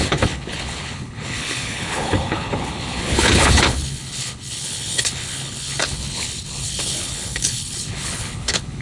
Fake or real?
fake